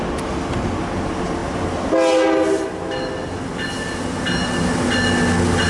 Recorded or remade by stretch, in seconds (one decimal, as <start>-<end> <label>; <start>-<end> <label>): 0.0-5.7 recorded